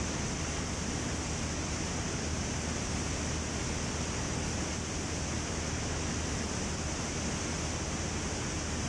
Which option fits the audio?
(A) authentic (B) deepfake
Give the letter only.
A